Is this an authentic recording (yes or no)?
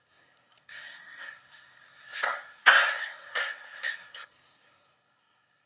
no